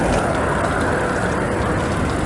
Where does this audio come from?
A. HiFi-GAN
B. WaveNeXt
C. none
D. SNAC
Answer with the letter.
C